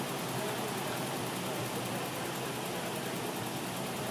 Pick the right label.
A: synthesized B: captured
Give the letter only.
B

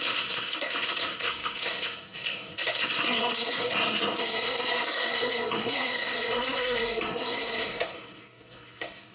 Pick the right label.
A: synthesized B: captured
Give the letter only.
A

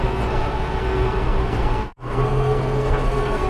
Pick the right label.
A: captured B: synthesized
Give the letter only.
B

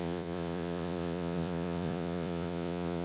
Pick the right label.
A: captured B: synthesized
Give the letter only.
B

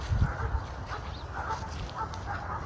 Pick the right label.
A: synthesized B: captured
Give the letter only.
B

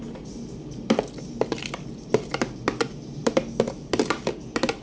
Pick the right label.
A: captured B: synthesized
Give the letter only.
A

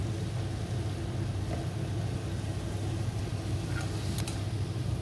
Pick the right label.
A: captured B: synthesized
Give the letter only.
A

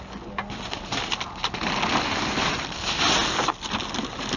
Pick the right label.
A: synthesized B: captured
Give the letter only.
B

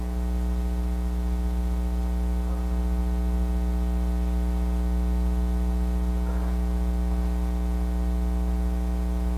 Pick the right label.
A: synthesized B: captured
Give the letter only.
B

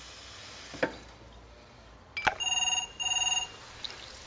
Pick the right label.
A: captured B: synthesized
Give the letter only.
A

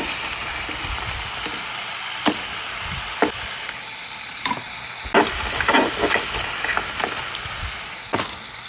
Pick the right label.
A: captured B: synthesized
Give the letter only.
A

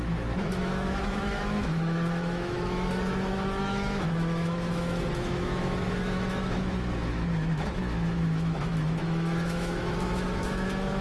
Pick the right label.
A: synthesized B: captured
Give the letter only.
A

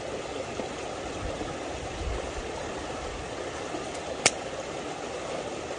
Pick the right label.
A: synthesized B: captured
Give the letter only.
B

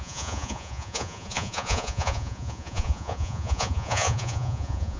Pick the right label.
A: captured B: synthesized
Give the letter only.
B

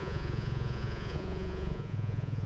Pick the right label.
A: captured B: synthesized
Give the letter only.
B